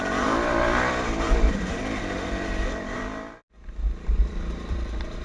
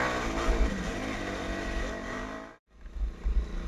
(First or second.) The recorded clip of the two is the second